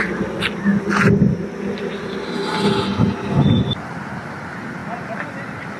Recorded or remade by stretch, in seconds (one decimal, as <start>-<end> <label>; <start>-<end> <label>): 0.0-5.8 recorded